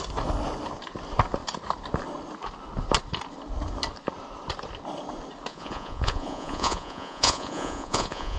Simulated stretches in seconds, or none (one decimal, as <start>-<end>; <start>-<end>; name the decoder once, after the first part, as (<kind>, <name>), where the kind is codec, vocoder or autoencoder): 5.5-8.4 (vocoder, Vocos)

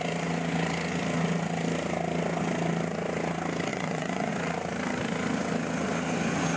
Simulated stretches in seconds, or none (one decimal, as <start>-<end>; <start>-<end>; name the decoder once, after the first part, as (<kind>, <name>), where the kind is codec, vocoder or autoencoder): 3.7-4.3 (vocoder, Vocos)

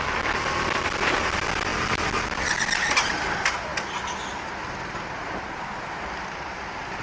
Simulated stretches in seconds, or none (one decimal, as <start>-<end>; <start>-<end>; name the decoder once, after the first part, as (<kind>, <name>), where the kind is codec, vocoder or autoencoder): none

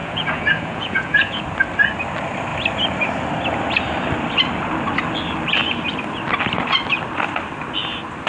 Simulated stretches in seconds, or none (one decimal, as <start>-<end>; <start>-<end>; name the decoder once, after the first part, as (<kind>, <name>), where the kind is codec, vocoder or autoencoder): 0.0-1.4 (vocoder, Vocos)

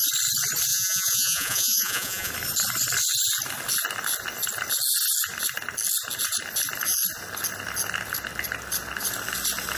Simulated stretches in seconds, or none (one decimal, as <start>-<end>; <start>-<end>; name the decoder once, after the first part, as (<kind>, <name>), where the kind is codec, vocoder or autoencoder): 0.7-2.3 (vocoder, Vocos)

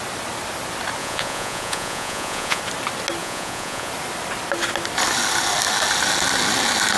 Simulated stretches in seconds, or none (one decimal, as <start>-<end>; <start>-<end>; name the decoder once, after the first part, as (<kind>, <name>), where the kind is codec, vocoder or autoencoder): 1.0-2.6 (vocoder, Vocos); 3.2-3.9

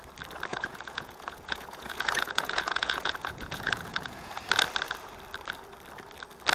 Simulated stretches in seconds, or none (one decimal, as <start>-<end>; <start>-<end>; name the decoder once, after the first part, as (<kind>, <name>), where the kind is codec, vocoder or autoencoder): 0.5-4.4 (vocoder, Vocos)

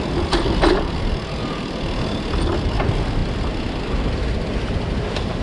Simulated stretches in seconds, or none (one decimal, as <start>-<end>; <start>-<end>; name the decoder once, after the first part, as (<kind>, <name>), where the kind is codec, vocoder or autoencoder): none